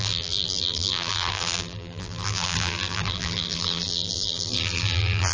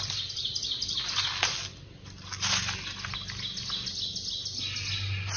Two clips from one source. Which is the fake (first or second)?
first